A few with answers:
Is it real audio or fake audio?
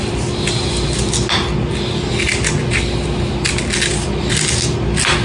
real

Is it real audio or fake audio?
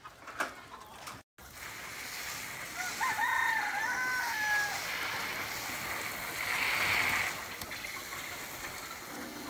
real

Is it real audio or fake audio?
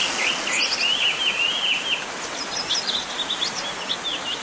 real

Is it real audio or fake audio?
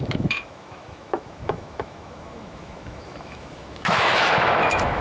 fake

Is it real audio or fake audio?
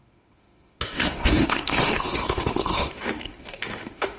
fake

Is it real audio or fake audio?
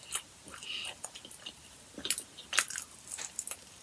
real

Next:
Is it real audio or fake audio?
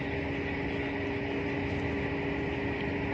real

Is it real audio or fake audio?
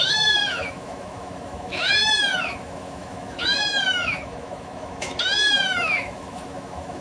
fake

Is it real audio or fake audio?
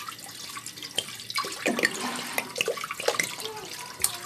real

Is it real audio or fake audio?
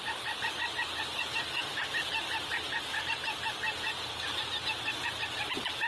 real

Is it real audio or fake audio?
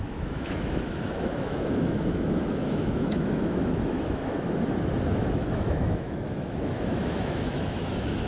fake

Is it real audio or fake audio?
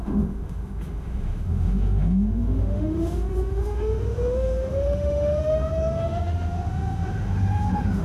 fake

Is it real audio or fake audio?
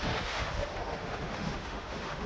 fake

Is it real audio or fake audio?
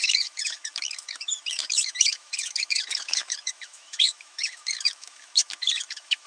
fake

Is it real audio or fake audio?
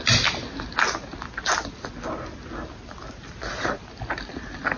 real